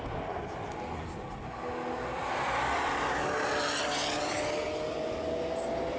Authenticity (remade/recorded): recorded